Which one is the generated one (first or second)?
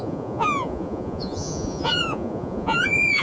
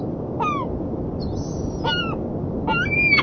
first